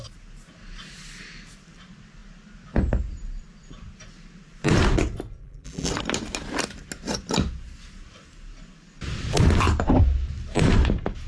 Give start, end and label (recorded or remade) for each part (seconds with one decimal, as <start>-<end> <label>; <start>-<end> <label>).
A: 0.0-5.4 recorded; 5.4-5.9 remade; 5.9-11.3 recorded